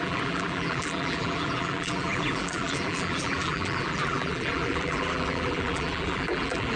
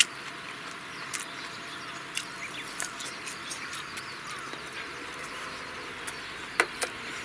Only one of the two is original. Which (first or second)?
second